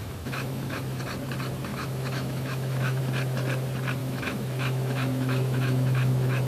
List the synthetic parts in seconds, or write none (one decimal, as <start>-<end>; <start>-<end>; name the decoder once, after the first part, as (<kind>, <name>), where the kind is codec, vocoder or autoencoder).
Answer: 0.0-1.0 (autoencoder, DAC-VAE); 1.7-3.0; 4.0-6.5